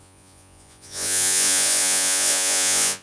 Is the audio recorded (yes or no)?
no